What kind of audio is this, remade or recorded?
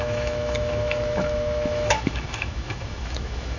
remade